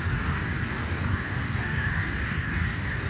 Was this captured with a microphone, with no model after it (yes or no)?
no